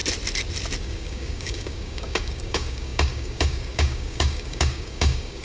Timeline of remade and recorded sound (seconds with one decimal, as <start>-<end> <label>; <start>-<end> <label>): 0.0-0.8 recorded; 0.8-5.4 remade